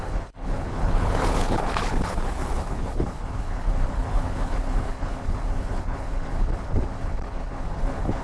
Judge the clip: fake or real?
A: fake